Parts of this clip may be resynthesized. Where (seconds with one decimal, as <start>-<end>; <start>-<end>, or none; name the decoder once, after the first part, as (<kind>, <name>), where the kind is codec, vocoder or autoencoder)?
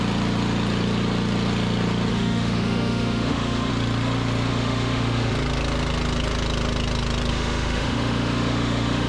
2.1-3.7 (autoencoder, DAC-VAE); 4.5-5.3; 7.3-9.1